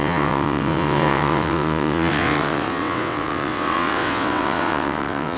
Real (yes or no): no